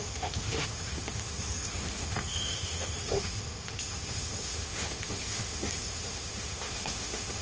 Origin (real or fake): fake